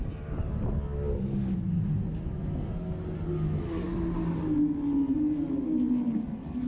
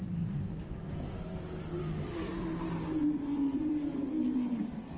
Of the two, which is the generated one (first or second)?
second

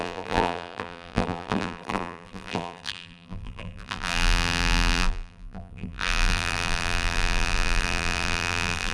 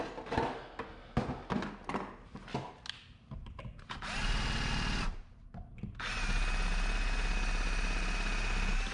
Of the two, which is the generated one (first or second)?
first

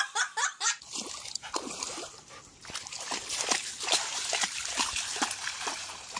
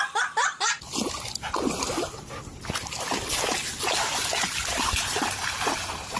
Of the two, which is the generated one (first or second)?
first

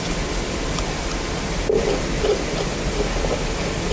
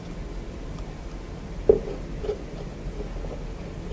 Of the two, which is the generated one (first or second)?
first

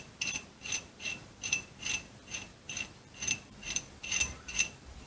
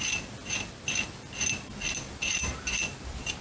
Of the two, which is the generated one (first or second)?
first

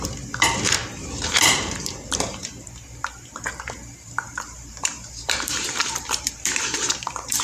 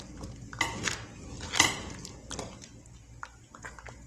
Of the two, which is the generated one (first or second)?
first